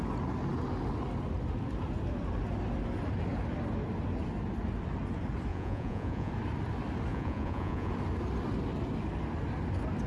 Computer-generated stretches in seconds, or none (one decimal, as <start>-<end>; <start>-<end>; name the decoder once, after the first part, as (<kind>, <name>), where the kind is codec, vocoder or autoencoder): 5.5-6.3 (vocoder, Vocos); 7.1-7.9